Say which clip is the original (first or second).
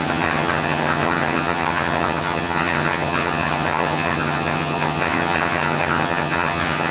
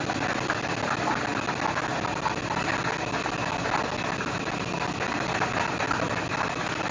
second